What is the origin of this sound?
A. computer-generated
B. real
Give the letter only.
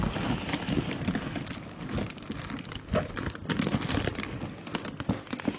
B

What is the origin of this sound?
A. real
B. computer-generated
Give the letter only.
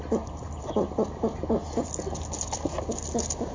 A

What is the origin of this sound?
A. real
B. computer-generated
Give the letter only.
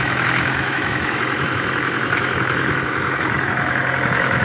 B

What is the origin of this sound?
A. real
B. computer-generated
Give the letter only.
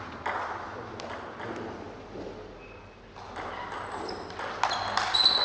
A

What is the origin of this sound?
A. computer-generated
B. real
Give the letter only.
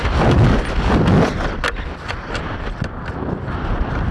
B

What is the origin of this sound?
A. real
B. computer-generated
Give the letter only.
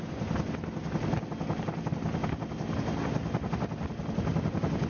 A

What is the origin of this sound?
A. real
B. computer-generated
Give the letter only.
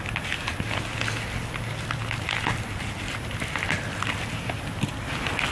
A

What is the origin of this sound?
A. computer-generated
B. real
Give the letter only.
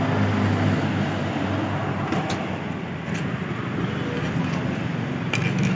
B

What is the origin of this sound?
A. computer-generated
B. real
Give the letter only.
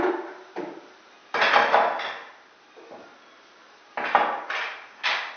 B